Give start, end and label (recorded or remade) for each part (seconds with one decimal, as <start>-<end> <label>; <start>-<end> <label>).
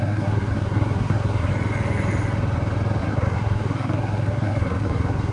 0.0-1.5 remade; 1.5-3.0 recorded; 3.0-5.3 remade